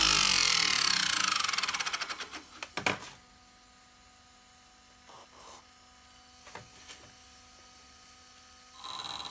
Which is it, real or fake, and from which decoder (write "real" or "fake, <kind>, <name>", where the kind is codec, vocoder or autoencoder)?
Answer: real